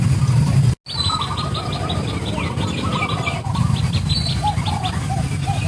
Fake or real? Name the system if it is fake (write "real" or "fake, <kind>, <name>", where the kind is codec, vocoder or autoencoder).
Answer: real